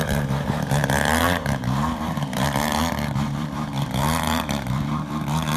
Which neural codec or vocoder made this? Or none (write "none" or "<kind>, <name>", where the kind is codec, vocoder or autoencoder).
vocoder, BigVGAN v2